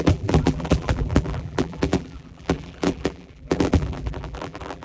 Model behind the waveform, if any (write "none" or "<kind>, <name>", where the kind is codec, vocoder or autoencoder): vocoder, BigVGAN v2